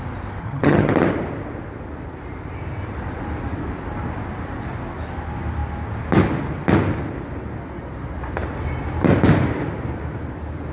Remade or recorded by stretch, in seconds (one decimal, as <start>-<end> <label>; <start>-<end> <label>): 0.0-0.4 recorded; 0.4-0.9 remade; 0.9-10.7 recorded